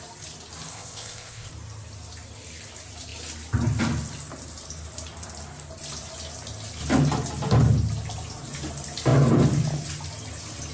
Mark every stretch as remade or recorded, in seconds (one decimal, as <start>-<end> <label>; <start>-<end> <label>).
0.0-0.7 recorded; 0.7-1.5 remade; 1.5-10.7 recorded